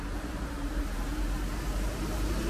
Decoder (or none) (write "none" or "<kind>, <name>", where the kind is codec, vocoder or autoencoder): none